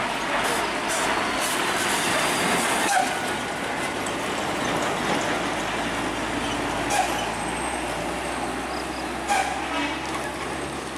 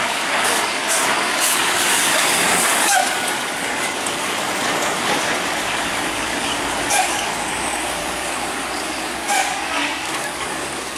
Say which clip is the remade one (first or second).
second